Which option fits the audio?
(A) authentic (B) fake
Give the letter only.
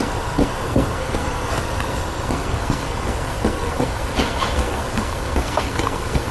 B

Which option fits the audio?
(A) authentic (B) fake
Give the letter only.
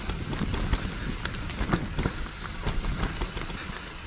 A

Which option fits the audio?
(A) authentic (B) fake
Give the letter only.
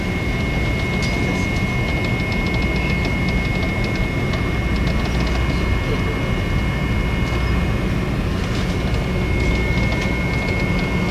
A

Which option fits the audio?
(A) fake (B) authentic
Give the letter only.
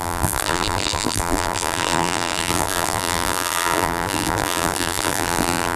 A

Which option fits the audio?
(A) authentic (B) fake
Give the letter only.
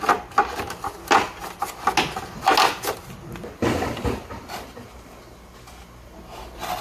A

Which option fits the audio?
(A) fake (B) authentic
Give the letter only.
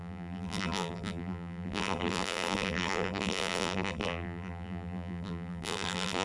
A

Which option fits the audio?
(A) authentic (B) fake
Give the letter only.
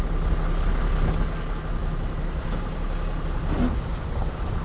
A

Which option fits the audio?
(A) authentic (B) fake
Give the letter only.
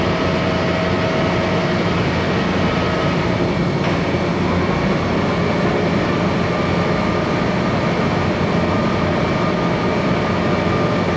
A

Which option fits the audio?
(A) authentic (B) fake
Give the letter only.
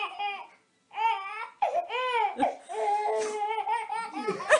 A